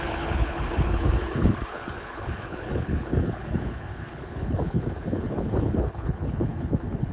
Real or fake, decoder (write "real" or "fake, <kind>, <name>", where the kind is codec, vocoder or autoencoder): fake, codec, HILCodec